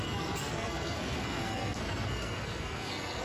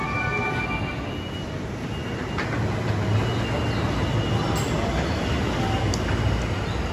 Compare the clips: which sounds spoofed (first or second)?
first